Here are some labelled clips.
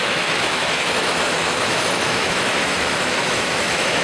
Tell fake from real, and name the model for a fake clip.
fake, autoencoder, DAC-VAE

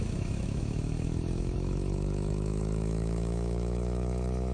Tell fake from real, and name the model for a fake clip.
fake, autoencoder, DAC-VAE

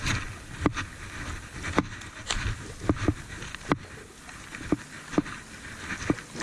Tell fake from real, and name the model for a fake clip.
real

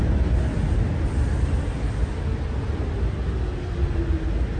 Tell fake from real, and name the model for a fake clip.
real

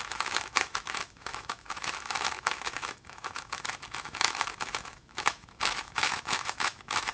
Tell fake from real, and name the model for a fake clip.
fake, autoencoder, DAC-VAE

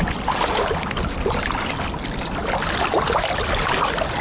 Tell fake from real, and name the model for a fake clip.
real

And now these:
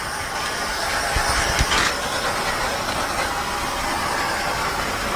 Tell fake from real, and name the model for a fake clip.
real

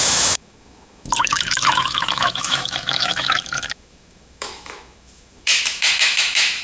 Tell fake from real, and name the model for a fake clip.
fake, autoencoder, DAC-VAE